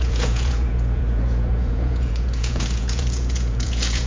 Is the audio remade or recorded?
remade